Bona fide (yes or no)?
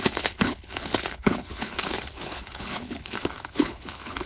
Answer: no